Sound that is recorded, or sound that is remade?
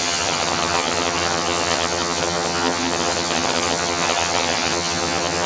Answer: remade